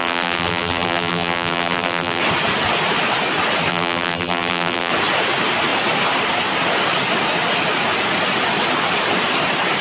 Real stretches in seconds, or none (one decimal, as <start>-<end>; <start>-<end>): 2.2-3.7; 4.9-9.8